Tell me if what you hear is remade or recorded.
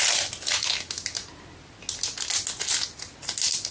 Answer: recorded